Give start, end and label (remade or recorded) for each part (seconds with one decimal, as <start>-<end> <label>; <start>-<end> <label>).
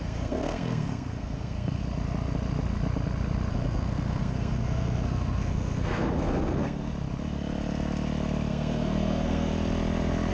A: 0.0-1.8 remade; 1.8-3.5 recorded; 3.5-6.9 remade; 6.9-8.5 recorded; 8.5-9.5 remade; 9.5-10.3 recorded